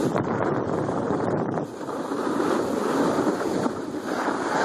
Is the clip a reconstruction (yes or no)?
yes